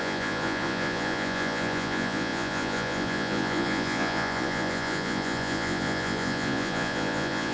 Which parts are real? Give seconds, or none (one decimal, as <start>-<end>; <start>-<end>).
none